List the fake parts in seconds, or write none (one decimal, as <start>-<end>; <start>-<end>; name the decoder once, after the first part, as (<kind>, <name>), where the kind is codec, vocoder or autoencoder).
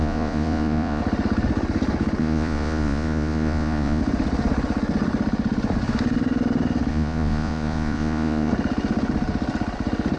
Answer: 0.0-1.0 (vocoder, Vocos); 2.2-4.0; 6.9-8.5